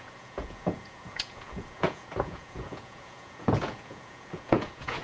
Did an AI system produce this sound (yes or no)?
yes